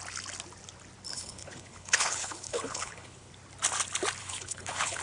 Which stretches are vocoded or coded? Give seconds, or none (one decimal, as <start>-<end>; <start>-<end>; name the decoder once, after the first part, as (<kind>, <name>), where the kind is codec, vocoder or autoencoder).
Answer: 1.1-3.3 (codec, HILCodec); 4.2-5.0